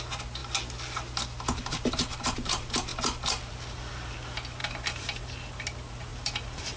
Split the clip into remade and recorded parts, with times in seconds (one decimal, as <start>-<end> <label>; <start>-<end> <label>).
0.0-4.6 recorded; 4.6-5.5 remade; 5.5-6.1 recorded; 6.1-6.8 remade